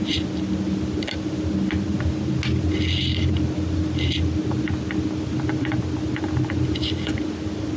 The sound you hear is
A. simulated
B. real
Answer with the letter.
B